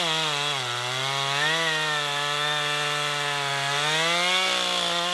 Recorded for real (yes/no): yes